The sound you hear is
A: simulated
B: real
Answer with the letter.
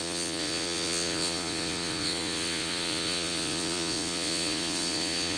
A